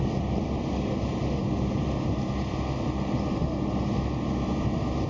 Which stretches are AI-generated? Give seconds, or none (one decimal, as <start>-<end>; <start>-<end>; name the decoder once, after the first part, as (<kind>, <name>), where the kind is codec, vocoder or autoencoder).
none